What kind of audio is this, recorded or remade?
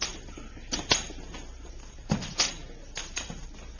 recorded